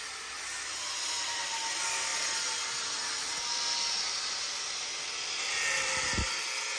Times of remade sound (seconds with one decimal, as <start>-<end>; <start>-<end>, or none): none

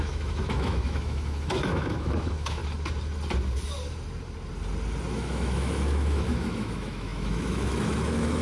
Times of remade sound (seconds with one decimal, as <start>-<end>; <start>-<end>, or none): 0.0-2.6; 5.1-8.4